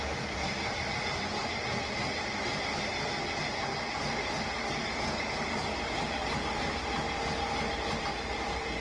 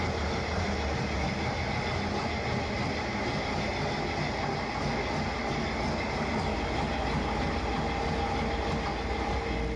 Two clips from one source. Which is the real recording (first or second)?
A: second